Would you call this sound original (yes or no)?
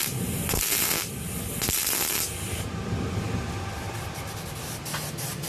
no